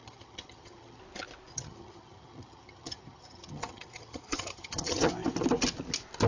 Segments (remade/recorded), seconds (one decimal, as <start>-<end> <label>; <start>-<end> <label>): 0.0-1.0 remade; 1.0-1.5 recorded; 1.5-5.1 remade; 5.1-6.3 recorded